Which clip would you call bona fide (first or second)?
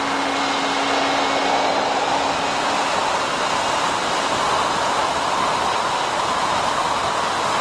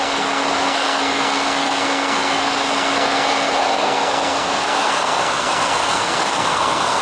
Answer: first